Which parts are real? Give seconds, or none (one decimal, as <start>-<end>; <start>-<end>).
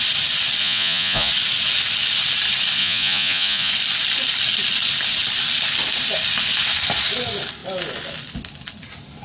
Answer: 0.0-0.6; 1.3-2.8; 3.7-9.2